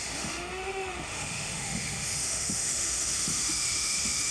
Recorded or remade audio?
remade